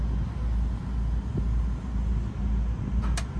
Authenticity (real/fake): real